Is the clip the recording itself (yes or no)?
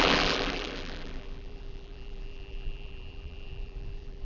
no